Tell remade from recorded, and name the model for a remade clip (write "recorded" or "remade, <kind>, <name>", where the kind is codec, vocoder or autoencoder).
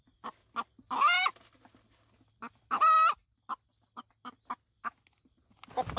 recorded